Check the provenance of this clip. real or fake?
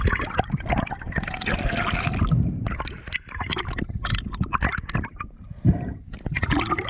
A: real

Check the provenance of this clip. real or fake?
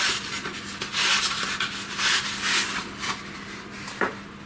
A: real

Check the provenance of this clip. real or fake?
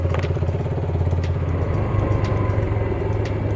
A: real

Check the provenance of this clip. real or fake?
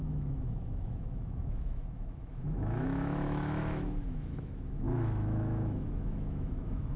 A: fake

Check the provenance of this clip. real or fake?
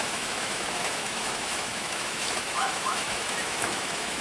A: fake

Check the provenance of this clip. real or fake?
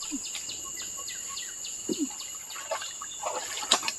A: real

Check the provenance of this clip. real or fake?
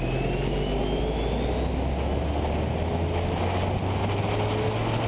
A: real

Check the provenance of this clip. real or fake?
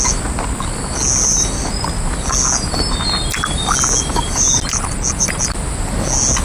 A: real